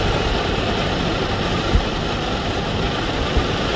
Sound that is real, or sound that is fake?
real